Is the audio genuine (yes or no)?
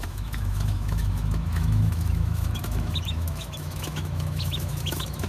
no